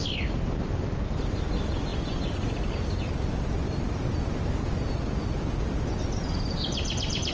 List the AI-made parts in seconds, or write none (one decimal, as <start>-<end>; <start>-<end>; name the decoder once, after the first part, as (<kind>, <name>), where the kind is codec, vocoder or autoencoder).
none